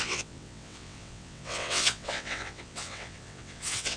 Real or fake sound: fake